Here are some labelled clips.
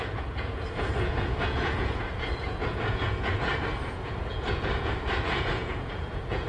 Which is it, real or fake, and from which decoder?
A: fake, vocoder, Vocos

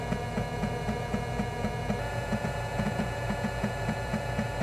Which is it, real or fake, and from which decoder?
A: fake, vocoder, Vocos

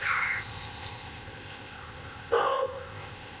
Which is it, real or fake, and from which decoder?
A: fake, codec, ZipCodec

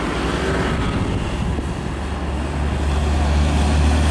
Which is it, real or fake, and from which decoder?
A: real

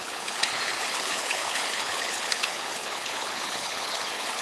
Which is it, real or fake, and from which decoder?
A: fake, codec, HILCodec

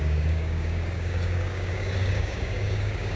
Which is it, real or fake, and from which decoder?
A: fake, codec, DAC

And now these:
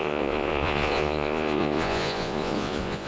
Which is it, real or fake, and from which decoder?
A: fake, vocoder, Vocos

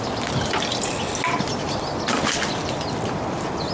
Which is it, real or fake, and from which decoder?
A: real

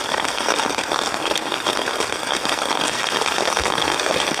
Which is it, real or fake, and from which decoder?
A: fake, codec, SNAC